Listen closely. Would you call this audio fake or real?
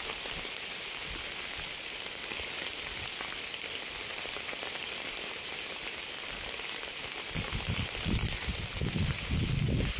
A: real